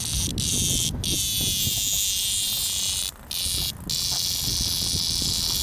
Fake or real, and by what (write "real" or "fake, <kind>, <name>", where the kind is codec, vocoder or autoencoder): real